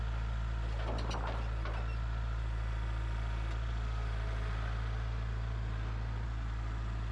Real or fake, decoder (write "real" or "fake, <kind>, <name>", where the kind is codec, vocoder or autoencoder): real